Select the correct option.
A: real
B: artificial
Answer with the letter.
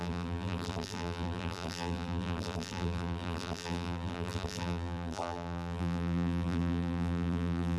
B